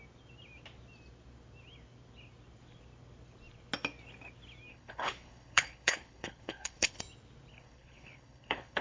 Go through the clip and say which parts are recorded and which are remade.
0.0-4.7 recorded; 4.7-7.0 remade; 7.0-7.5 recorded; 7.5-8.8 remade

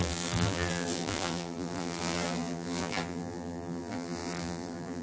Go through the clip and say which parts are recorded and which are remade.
0.0-5.0 remade